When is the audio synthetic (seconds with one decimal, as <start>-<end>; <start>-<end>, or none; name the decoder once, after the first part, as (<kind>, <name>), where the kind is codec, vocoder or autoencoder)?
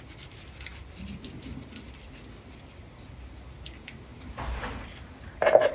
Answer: none